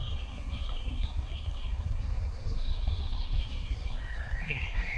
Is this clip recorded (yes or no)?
no